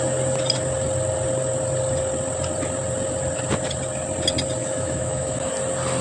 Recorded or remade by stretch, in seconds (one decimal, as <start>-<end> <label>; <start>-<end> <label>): 0.0-4.6 recorded; 4.6-5.5 remade; 5.5-6.0 recorded